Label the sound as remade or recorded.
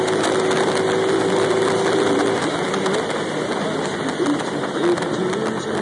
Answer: recorded